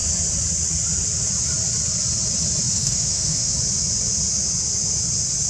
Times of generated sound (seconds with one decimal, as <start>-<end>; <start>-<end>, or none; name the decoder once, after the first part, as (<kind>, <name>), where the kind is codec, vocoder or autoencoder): 2.7-3.5 (autoencoder, DAC-VAE)